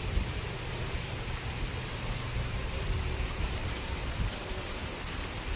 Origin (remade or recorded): remade